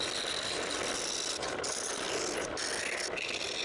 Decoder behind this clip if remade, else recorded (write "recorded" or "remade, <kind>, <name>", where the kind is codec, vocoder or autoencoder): recorded